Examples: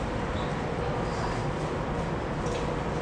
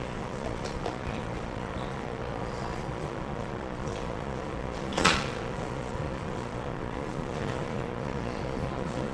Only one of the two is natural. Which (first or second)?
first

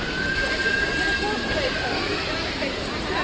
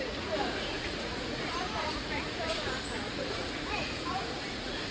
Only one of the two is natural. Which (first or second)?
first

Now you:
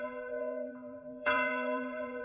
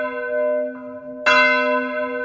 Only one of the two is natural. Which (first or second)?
second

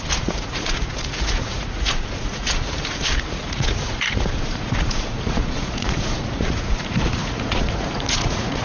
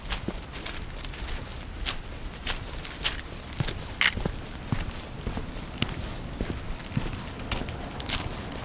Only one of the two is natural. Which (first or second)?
second